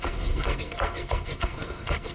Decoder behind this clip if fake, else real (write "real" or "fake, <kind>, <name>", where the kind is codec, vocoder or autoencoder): fake, codec, SNAC